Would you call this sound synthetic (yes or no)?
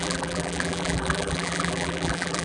yes